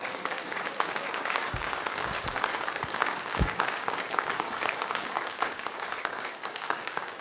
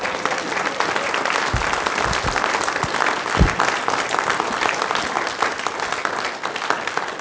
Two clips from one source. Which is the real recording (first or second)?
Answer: second